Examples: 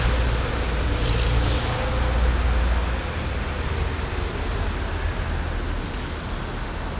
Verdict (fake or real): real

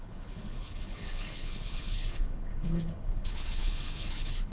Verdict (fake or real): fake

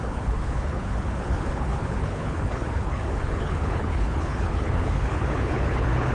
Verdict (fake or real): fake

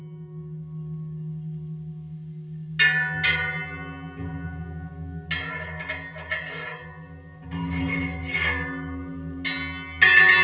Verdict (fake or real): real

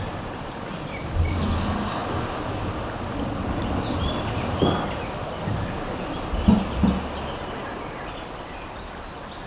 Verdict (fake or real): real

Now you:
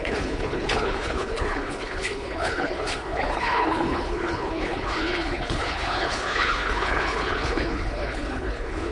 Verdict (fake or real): fake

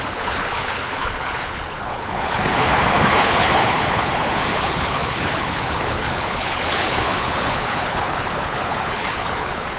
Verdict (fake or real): fake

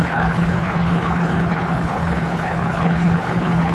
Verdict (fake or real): fake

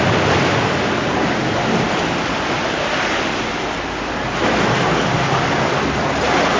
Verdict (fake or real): real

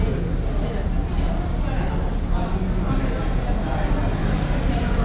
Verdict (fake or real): real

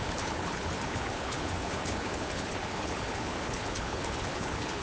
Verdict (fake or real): fake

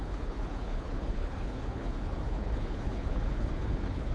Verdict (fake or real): fake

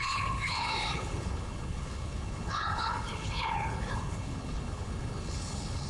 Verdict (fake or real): fake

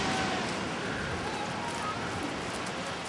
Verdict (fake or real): real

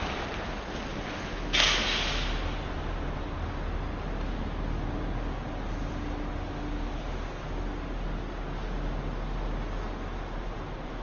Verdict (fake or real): real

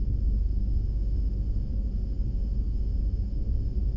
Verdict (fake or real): real